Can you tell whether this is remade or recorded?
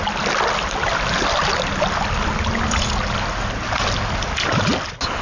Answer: recorded